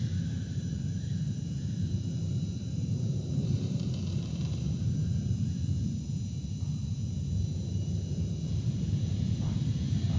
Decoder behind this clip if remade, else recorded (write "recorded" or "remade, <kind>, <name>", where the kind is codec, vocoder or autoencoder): remade, vocoder, BigVGAN v2